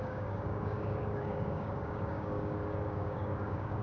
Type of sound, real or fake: fake